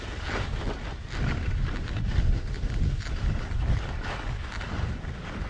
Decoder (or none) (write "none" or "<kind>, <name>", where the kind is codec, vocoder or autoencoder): none